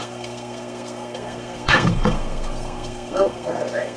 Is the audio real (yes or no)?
no